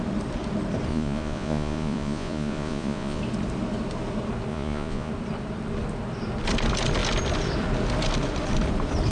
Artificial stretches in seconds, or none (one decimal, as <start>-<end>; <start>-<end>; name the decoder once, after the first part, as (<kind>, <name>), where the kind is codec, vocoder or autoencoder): 0.9-3.2 (vocoder, Vocos); 4.5-5.1